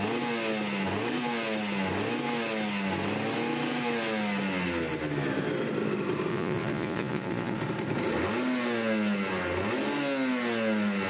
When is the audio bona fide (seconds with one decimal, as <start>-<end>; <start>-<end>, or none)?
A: 0.0-6.3; 7.6-11.1